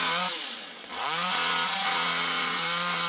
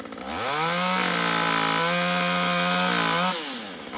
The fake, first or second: first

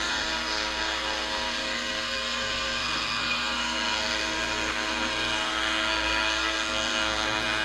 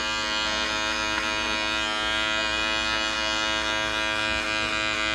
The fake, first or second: first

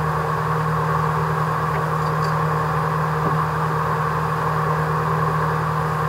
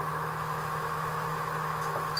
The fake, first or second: second